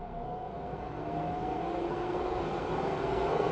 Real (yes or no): no